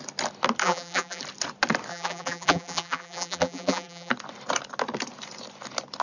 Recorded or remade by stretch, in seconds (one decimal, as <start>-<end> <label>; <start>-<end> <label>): 0.0-0.6 recorded; 0.6-1.2 remade; 1.2-1.9 recorded; 1.9-4.1 remade; 4.1-6.0 recorded